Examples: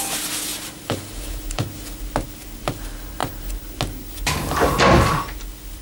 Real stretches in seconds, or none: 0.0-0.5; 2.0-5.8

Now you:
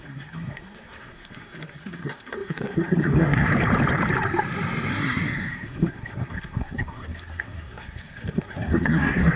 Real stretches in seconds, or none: 3.5-4.9